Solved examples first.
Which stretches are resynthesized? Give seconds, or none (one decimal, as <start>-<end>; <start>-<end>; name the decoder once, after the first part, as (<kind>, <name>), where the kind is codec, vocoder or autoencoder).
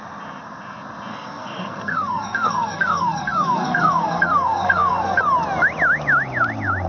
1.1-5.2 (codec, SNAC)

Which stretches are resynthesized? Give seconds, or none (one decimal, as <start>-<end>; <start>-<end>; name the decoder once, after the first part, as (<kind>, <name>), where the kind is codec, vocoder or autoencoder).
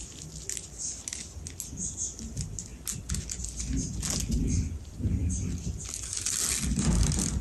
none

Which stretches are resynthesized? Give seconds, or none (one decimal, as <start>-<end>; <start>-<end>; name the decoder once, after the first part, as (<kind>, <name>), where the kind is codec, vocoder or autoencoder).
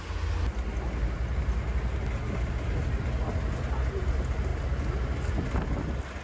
none